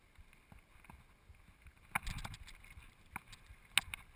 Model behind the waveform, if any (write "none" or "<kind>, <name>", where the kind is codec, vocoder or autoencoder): none